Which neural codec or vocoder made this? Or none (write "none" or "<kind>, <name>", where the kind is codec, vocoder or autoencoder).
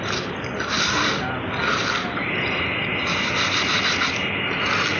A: none